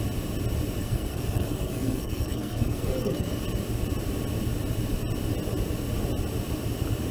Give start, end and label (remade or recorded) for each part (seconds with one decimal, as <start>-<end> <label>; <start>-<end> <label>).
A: 0.0-0.8 recorded; 0.8-3.4 remade; 3.4-7.1 recorded